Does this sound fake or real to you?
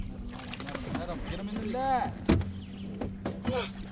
real